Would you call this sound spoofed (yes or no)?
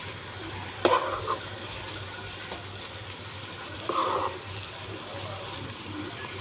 yes